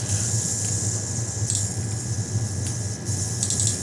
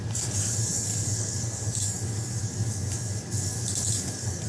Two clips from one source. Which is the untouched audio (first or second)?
first